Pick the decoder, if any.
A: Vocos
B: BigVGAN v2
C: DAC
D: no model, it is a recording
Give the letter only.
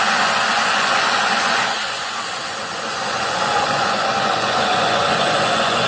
A